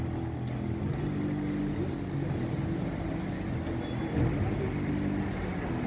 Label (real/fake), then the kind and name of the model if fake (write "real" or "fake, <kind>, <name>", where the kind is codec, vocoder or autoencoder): real